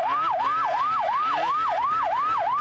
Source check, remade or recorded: recorded